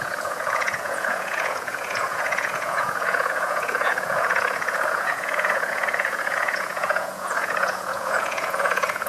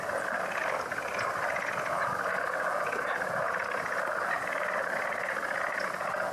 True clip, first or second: second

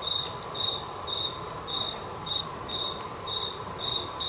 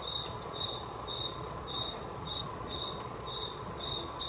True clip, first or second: first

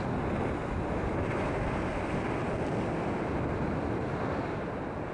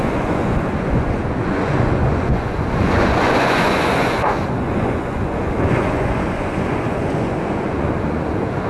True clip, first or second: first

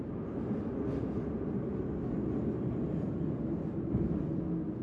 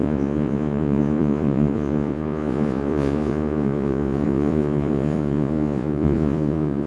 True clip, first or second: first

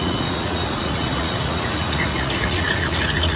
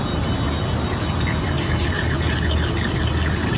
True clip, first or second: second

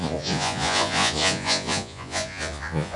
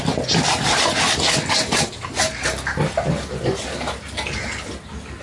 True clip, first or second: second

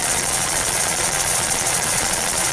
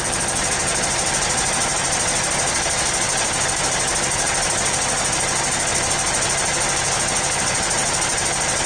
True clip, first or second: second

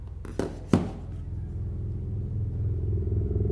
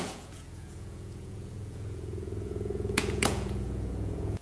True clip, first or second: first